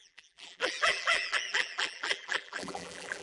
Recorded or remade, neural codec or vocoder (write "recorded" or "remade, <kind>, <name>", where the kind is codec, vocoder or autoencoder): remade, vocoder, BigVGAN v2